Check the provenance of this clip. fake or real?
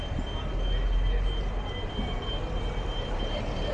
real